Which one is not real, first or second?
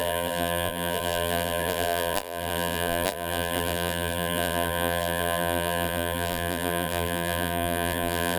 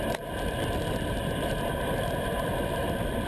first